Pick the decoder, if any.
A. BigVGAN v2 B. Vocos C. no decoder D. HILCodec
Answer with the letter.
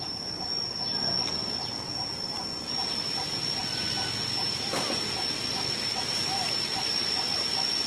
C